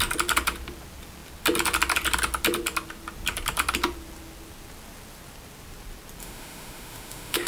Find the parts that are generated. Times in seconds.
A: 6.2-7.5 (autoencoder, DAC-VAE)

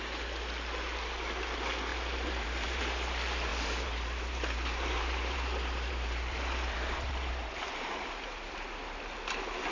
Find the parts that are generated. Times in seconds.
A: 1.9-2.8 (vocoder, BigVGAN v2); 3.5-7.7

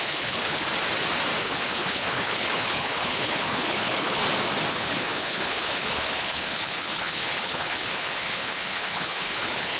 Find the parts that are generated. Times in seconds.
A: 0.0-0.7 (codec, HILCodec); 1.4-4.2; 4.7-9.8